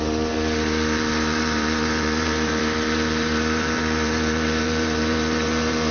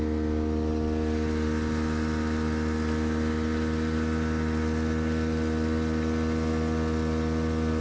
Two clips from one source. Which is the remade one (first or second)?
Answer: first